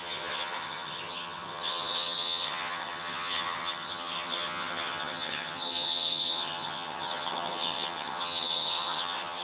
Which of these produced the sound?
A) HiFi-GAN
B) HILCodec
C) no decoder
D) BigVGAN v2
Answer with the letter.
A